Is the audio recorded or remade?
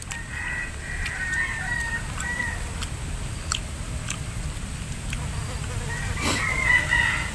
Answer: recorded